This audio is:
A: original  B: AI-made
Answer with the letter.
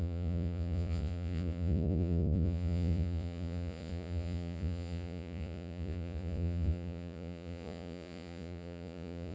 B